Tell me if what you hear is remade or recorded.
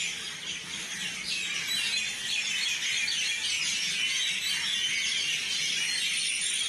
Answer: recorded